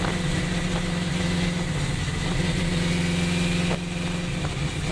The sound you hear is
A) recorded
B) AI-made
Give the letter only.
A